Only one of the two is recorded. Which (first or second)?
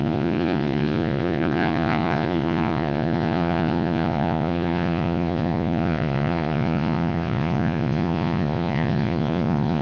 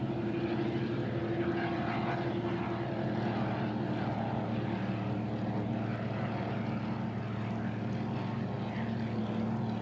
second